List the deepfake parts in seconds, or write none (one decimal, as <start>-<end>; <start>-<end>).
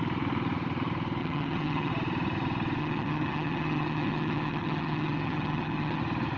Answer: 1.2-1.9; 2.8-6.0